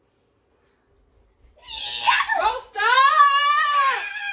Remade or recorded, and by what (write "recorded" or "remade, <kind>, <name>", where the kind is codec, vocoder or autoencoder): recorded